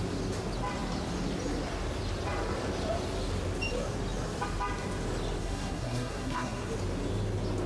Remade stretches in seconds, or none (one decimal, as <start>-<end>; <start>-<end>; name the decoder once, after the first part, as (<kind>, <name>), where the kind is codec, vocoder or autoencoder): 5.4-6.7 (codec, SNAC)